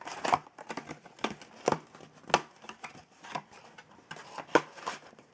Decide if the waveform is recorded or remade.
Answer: recorded